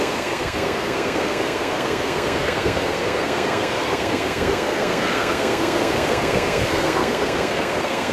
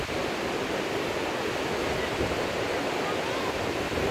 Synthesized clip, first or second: first